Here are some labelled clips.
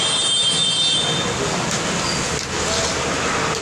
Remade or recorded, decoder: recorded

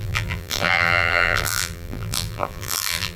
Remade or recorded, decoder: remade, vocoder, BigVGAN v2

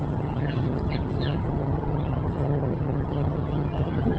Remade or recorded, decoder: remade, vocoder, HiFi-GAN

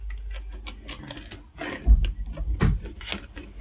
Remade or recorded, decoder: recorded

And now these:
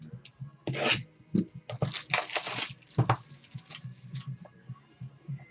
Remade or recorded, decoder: recorded